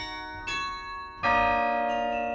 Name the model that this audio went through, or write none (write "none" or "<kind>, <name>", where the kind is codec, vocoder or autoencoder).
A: none